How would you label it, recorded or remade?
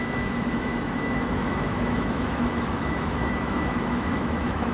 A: remade